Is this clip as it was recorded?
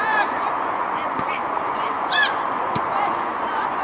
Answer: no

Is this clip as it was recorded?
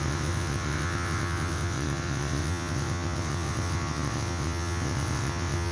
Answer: no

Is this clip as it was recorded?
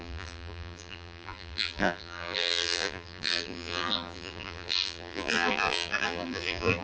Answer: no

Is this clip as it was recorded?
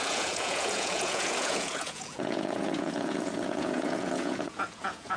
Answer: no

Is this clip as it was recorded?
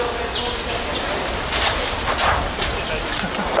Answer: yes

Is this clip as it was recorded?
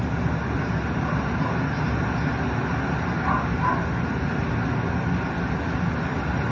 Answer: yes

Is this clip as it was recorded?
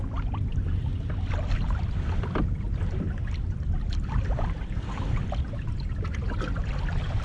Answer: no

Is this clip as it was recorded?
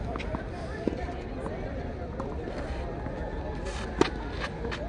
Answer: yes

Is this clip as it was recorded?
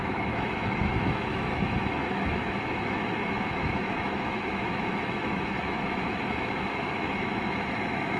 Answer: no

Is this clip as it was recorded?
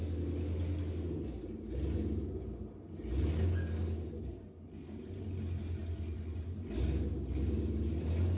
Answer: yes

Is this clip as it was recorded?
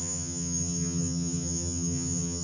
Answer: no